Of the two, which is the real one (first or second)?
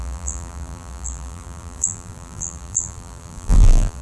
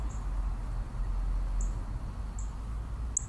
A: second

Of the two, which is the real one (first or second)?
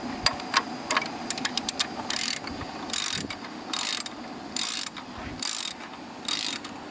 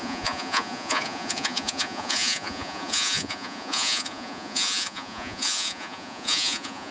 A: first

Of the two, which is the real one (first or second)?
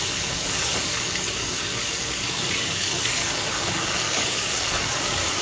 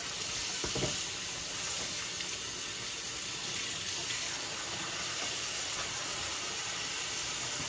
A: second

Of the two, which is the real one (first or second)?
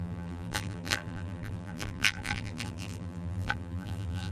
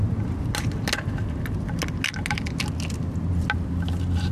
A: second